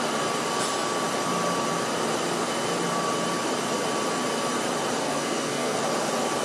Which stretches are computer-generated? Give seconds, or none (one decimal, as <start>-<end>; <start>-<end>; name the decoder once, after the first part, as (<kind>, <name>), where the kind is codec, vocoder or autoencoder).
5.0-5.8 (codec, SNAC)